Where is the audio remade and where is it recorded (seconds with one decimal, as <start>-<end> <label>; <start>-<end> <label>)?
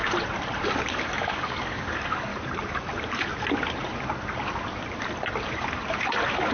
0.0-0.9 recorded; 0.9-2.3 remade; 2.3-6.5 recorded